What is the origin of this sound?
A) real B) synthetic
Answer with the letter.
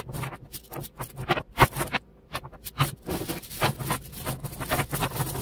A